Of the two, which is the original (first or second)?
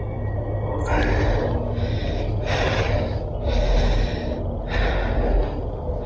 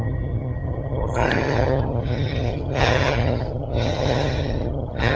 first